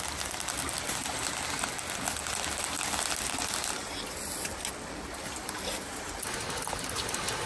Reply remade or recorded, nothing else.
recorded